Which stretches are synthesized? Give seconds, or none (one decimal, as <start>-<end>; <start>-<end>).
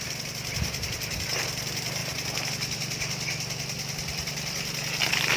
none